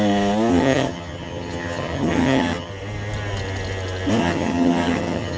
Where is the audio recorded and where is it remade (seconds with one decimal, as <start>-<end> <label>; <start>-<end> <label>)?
0.0-0.5 recorded; 0.5-2.7 remade; 2.7-4.2 recorded; 4.2-5.4 remade